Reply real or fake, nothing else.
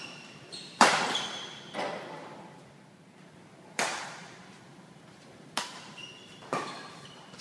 fake